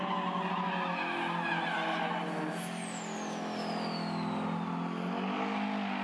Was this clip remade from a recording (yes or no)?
no